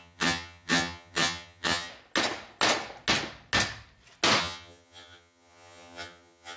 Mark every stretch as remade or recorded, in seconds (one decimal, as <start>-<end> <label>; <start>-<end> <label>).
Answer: 0.0-1.9 remade; 1.9-4.4 recorded; 4.4-6.6 remade